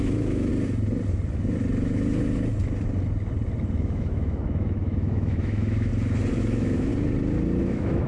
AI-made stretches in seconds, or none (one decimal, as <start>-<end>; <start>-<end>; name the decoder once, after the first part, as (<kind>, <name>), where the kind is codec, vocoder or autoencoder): 0.0-0.5 (autoencoder, DAC-VAE); 3.8-5.9; 6.4-6.9; 7.6-8.1